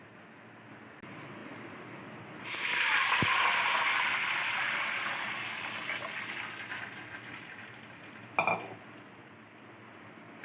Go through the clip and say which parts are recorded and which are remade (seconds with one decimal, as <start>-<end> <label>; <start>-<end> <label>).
0.0-10.4 recorded